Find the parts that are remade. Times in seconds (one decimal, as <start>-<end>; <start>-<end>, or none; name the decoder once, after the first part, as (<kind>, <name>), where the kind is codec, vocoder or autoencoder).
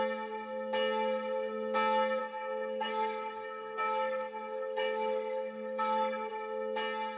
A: 2.2-6.3 (codec, SNAC)